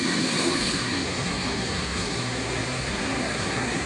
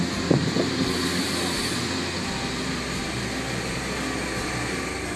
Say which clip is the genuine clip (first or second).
second